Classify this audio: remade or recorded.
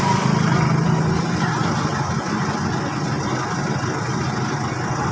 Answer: recorded